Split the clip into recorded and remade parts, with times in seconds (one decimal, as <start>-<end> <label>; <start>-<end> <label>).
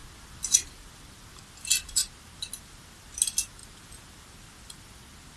0.0-5.4 recorded